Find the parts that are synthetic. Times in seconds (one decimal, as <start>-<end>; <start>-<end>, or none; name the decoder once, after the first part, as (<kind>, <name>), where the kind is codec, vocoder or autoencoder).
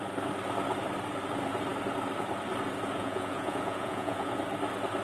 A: 3.0-4.4 (vocoder, Vocos)